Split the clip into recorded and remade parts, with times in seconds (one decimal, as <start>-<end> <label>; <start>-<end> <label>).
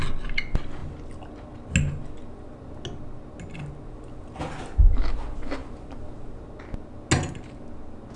0.0-8.2 recorded